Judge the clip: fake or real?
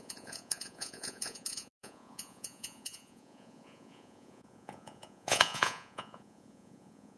fake